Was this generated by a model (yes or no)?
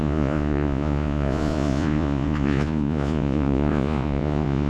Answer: yes